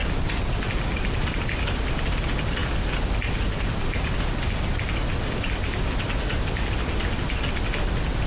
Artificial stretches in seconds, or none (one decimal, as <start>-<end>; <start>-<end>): none